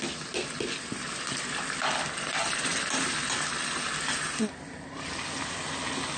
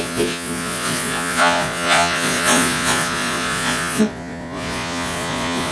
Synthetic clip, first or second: second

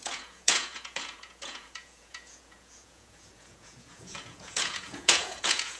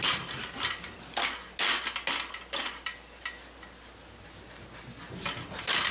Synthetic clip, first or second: first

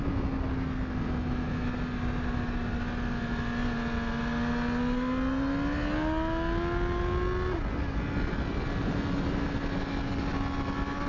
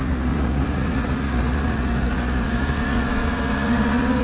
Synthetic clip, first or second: second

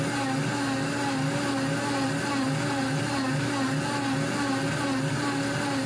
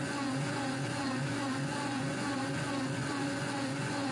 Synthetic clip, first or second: second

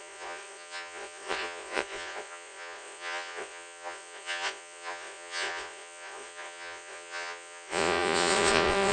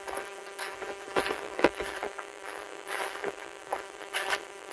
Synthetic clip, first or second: first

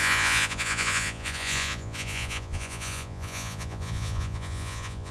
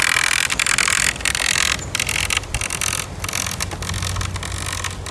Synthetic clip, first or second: first